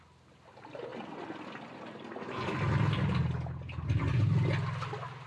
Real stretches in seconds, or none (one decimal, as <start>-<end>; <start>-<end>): 0.0-5.3